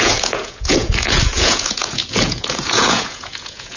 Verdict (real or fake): fake